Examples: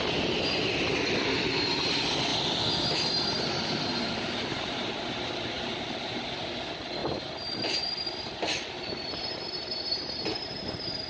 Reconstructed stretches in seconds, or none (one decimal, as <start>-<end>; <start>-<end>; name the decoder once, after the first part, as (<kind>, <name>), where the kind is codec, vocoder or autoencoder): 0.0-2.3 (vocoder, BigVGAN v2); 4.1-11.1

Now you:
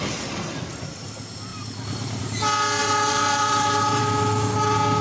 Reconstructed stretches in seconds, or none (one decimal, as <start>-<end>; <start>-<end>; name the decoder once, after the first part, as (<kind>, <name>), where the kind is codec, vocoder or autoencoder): 1.5-2.2 (vocoder, BigVGAN v2); 2.8-4.0

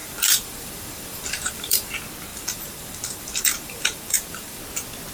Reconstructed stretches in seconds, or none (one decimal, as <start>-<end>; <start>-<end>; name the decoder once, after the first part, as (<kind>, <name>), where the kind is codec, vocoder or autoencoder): 0.0-1.9 (vocoder, BigVGAN v2); 2.3-4.6

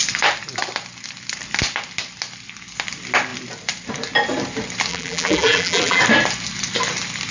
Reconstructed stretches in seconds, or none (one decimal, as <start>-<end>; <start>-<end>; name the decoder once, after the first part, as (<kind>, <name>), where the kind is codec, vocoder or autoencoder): 4.9-6.0 (vocoder, BigVGAN v2)